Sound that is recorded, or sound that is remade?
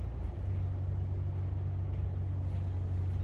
recorded